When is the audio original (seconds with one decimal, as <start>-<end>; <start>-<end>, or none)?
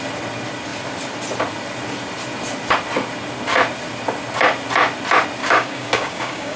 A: 0.0-5.4